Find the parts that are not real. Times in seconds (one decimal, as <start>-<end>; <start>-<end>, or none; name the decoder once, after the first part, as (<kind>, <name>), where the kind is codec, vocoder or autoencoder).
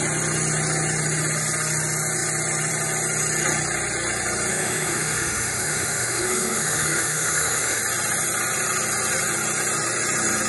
4.5-7.8 (autoencoder, DAC-VAE)